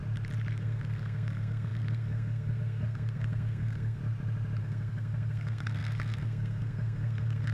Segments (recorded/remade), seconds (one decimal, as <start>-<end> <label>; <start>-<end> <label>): 0.0-0.5 recorded; 0.5-4.0 remade; 4.0-4.6 recorded; 4.6-7.5 remade